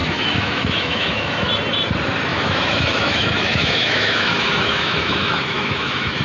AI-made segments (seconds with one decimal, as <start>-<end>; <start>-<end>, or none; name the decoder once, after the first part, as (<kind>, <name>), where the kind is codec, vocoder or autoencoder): 0.0-1.5 (autoencoder, DAC-VAE); 2.3-6.2